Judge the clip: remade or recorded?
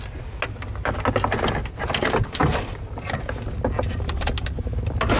recorded